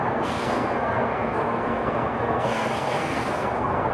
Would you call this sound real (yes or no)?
no